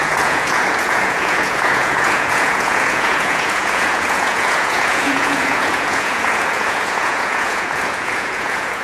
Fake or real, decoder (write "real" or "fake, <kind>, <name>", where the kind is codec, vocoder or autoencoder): fake, vocoder, Vocos